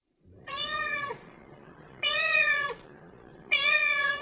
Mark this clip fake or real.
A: fake